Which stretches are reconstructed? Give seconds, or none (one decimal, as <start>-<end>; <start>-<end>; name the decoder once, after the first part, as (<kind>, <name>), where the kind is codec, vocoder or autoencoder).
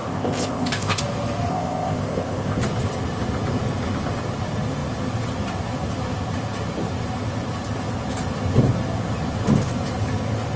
0.0-1.0 (codec, ZipCodec); 1.5-2.6